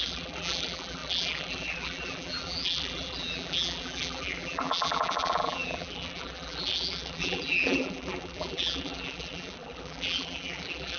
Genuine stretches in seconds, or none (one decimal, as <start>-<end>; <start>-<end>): none